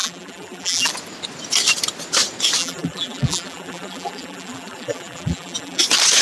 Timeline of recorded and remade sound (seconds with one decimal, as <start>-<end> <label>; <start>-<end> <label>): 0.0-0.9 remade; 0.9-2.6 recorded; 2.6-5.8 remade; 5.8-6.2 recorded